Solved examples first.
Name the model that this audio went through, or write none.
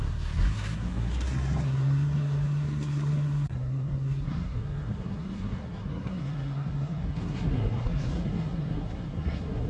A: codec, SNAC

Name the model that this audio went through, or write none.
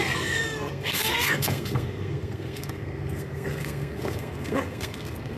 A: codec, SNAC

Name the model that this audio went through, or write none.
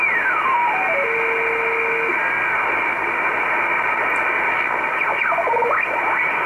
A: none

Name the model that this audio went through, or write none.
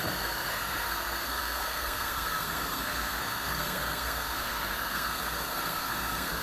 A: codec, SNAC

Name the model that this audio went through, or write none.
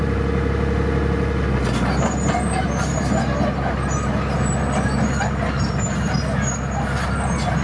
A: none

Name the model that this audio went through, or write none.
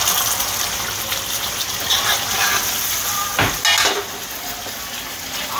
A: none